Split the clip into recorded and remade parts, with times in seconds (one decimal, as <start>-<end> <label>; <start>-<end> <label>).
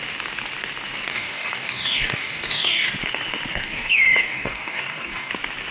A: 0.0-1.1 recorded; 1.1-2.9 remade; 2.9-3.5 recorded; 3.5-5.3 remade; 5.3-5.7 recorded